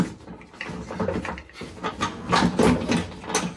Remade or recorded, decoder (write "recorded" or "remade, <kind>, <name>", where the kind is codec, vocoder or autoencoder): recorded